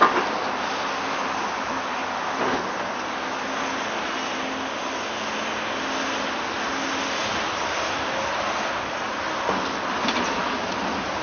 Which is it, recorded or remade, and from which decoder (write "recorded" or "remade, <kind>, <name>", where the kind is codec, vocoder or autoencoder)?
recorded